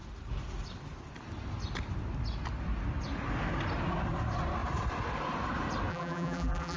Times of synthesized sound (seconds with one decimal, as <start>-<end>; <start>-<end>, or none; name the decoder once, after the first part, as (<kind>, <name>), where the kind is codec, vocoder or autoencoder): 5.9-6.8 (vocoder, BigVGAN v2)